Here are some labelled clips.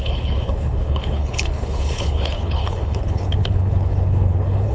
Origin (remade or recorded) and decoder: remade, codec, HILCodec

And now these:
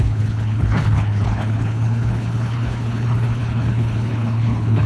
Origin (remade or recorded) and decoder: remade, codec, HILCodec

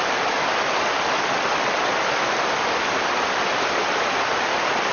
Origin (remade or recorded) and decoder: recorded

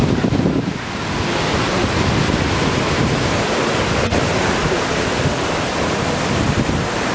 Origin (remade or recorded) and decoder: recorded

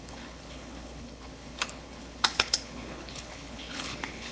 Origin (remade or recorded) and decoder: remade, codec, HILCodec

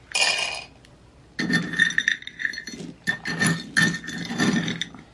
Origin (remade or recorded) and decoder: recorded